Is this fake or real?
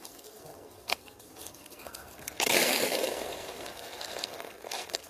fake